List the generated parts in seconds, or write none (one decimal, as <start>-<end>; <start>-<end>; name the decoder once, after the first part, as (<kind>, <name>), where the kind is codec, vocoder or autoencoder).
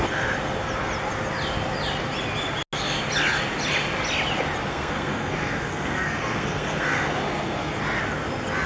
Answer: 4.7-7.7 (codec, SNAC)